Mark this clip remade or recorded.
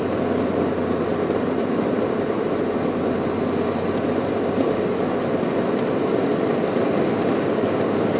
recorded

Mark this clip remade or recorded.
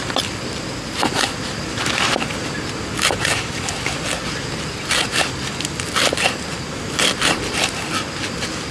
recorded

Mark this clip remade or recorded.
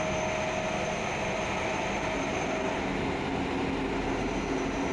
recorded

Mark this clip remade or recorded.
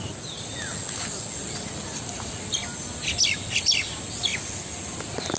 recorded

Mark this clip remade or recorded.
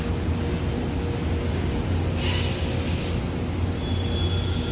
recorded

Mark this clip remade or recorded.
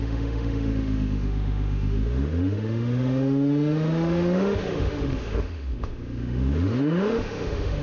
remade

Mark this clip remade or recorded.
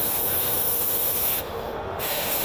remade